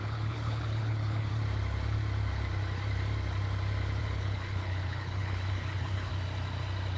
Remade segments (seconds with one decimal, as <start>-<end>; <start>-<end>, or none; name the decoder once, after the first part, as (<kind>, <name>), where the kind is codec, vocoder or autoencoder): 0.0-1.3 (codec, HILCodec); 4.0-6.1